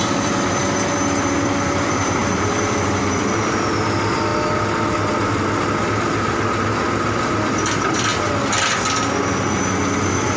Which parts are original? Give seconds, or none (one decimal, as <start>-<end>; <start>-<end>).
4.3-7.5; 8.1-10.0